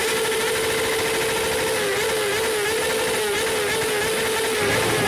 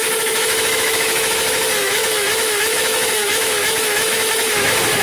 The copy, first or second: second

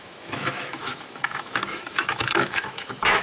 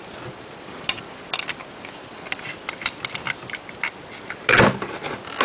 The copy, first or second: first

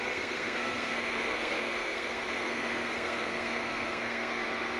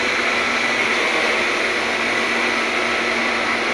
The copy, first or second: first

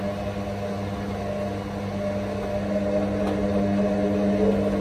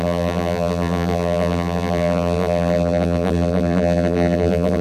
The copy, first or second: second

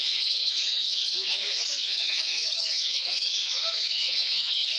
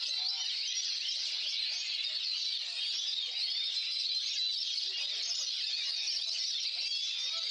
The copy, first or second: first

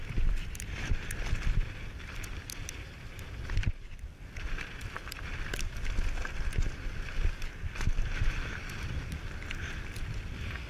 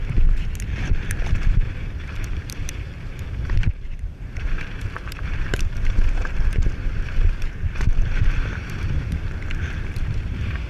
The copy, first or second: second